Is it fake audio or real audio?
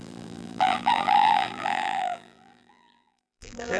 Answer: fake